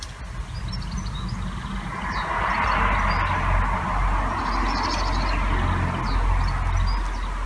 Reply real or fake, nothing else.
real